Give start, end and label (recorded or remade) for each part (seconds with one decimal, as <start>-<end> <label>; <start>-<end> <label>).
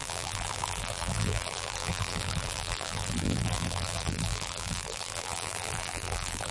0.0-6.5 remade